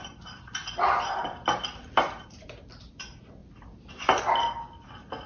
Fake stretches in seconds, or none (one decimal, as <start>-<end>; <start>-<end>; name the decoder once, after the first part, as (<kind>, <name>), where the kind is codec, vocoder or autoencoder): 0.0-2.9 (vocoder, BigVGAN v2); 3.4-4.3